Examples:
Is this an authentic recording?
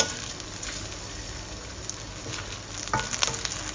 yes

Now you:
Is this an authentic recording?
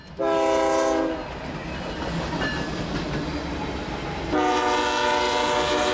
yes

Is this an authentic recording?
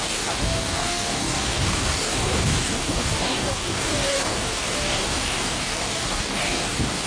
no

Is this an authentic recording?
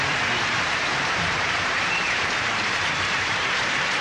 no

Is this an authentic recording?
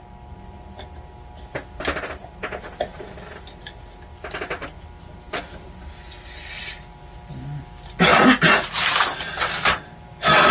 yes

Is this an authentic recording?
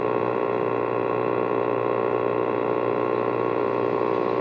yes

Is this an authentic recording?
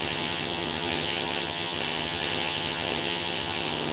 no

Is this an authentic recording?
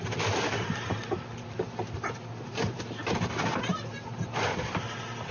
yes